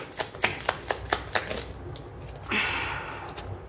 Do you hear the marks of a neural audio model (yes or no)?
no